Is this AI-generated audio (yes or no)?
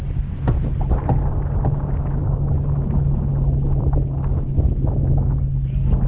no